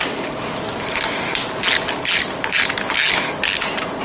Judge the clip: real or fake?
real